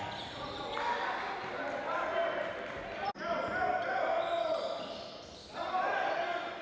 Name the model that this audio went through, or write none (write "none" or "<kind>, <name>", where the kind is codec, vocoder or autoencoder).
none